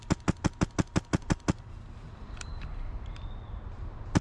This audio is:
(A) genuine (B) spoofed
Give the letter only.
A